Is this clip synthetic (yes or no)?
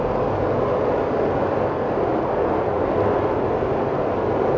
no